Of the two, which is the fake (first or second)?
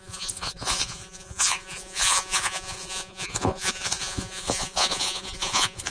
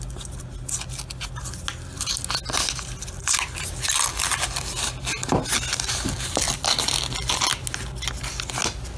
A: first